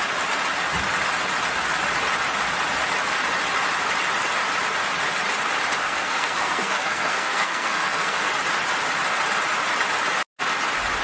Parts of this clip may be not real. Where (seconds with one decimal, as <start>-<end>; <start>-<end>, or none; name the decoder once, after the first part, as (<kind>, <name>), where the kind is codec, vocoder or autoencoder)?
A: 5.8-8.3 (codec, SNAC)